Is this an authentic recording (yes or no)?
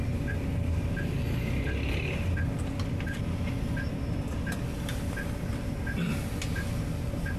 yes